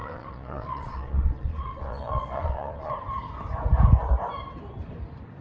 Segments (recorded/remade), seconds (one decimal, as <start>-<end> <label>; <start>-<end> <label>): 0.0-2.9 remade; 2.9-5.4 recorded